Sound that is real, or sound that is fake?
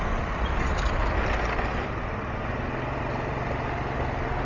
real